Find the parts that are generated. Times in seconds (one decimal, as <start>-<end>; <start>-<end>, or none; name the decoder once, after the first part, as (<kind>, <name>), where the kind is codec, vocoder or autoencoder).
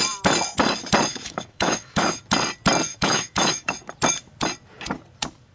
1.1-2.2 (autoencoder, DAC-VAE); 2.9-3.7